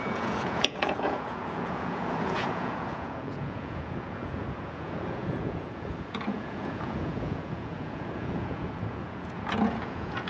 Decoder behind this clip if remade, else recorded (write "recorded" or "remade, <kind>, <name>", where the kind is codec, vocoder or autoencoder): remade, vocoder, Vocos